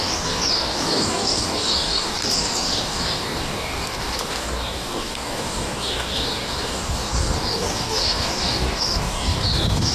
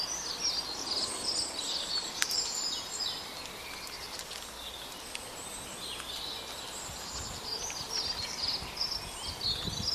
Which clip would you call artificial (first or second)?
first